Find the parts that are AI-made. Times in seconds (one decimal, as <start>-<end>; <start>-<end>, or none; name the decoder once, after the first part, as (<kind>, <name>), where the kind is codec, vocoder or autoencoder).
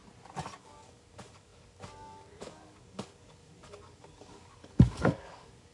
0.6-5.7 (codec, DAC)